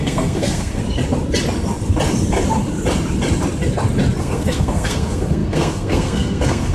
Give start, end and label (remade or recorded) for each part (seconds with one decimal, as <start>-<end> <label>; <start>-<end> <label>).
0.0-0.8 remade; 0.8-4.2 recorded; 4.2-6.7 remade